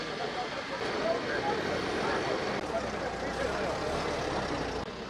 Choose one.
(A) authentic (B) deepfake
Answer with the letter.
A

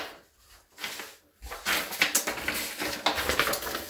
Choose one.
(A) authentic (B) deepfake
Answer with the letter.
A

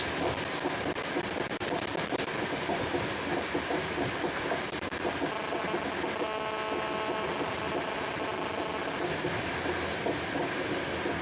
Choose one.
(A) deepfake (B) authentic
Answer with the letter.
B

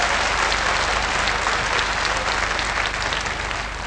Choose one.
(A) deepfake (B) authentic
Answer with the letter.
B